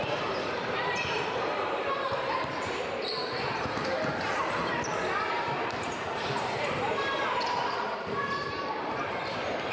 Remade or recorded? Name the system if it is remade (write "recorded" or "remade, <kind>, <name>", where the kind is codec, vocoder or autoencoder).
remade, vocoder, BigVGAN v2